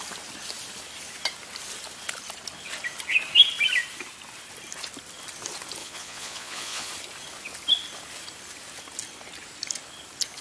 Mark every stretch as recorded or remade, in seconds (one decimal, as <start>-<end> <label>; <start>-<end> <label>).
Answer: 0.0-5.8 recorded; 5.8-6.9 remade; 6.9-10.4 recorded